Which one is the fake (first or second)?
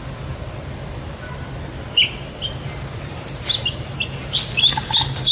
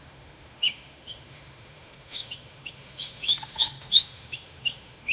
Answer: second